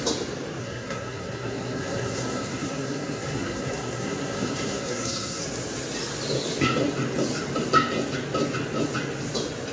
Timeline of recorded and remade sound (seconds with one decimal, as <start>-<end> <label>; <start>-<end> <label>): 0.0-0.6 recorded; 0.6-5.4 remade; 5.4-9.7 recorded